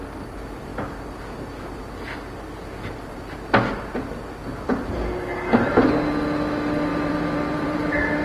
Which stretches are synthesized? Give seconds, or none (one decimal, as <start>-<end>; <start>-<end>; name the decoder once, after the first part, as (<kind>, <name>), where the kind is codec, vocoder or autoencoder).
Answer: 6.9-8.2 (vocoder, BigVGAN v2)